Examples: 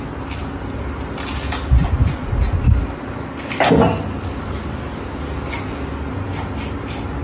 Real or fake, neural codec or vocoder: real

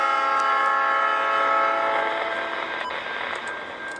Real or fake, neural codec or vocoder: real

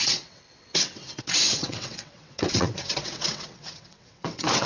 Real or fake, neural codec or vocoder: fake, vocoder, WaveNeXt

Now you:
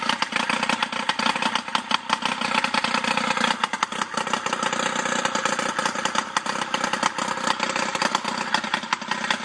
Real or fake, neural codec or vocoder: real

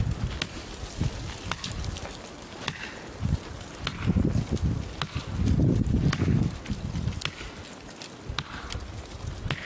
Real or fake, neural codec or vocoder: real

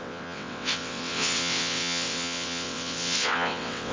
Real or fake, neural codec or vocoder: fake, vocoder, WaveNeXt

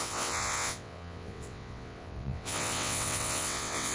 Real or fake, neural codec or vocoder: fake, vocoder, WaveNeXt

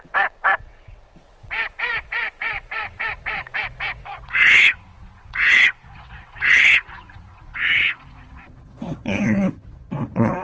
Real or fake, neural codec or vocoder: fake, vocoder, WaveNeXt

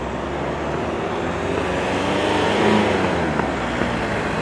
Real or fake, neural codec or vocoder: real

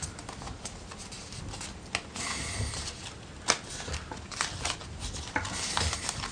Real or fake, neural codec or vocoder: real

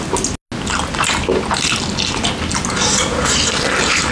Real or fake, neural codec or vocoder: real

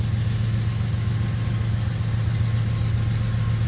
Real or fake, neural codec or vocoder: real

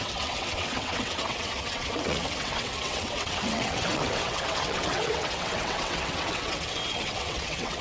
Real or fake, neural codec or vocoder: fake, vocoder, WaveNeXt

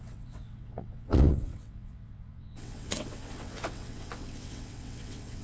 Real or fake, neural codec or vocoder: fake, vocoder, WaveNeXt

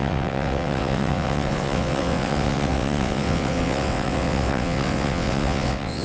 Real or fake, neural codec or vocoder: fake, vocoder, WaveNeXt